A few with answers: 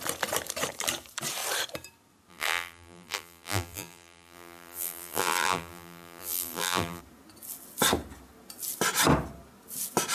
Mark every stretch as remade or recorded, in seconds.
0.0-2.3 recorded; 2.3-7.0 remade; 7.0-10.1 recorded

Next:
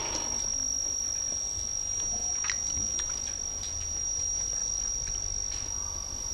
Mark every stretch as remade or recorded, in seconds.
0.0-4.6 recorded; 4.6-5.2 remade; 5.2-6.3 recorded

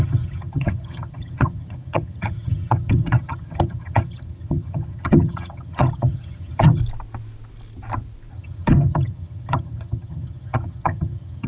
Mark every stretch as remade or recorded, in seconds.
0.0-6.8 remade; 6.8-8.3 recorded; 8.3-11.5 remade